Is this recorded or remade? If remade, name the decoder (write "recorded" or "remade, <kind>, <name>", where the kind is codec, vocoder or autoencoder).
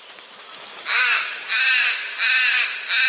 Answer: recorded